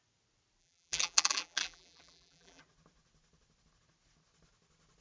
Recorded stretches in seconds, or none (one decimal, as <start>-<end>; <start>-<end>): 0.0-0.6; 2.6-5.0